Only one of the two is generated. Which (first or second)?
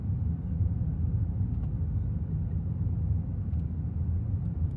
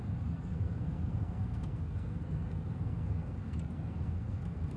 second